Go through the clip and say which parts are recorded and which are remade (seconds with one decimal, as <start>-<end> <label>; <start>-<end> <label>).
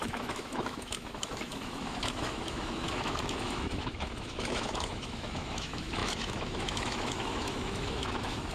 0.0-8.5 remade